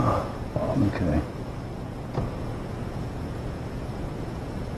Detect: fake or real fake